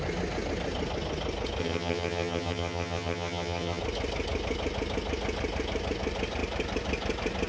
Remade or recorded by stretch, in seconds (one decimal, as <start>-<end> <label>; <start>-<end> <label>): 0.0-1.6 recorded; 1.6-3.8 remade; 3.8-7.5 recorded